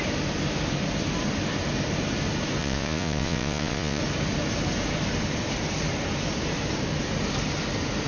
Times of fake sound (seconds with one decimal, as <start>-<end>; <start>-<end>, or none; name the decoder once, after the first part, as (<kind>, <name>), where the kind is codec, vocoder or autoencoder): 2.6-4.0 (vocoder, Vocos)